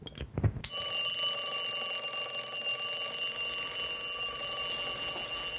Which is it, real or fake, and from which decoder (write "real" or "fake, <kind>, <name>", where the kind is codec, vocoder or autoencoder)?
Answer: real